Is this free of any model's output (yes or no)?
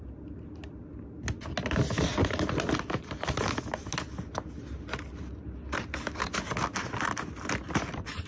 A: yes